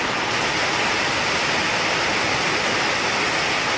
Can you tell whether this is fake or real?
real